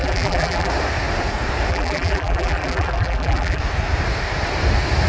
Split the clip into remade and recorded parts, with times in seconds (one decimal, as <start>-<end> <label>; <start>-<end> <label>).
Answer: 0.0-0.7 remade; 0.7-1.7 recorded; 1.7-3.6 remade; 3.6-5.1 recorded